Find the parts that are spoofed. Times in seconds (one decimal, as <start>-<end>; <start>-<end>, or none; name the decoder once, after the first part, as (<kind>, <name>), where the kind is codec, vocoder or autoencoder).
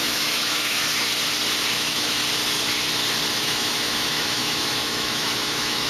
0.0-0.8 (autoencoder, DAC-VAE); 1.7-2.2; 3.3-5.9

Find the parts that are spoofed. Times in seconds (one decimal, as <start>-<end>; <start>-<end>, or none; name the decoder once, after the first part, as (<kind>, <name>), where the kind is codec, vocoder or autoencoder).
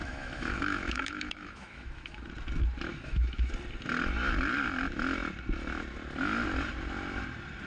0.0-2.2 (autoencoder, DAC-VAE); 2.9-3.5